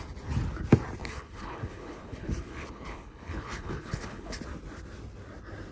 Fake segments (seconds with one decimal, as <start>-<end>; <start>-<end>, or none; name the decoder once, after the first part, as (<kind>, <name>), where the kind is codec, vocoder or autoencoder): 1.0-4.4 (codec, HILCodec)